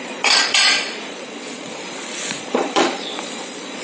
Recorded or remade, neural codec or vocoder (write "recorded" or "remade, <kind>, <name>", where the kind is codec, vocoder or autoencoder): remade, vocoder, Vocos